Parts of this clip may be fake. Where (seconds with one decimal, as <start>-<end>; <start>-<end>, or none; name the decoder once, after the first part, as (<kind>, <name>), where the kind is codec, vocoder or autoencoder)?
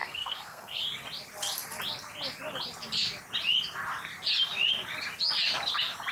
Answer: 0.0-0.8 (codec, SNAC)